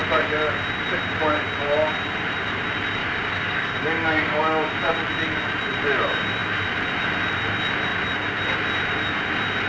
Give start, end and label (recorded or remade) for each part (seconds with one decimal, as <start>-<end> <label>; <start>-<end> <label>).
0.0-3.0 recorded; 3.0-4.7 remade; 4.7-9.7 recorded